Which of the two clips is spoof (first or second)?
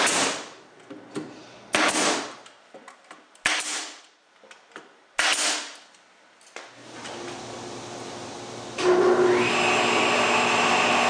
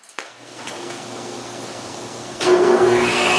second